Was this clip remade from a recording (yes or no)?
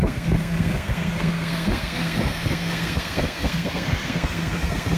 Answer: yes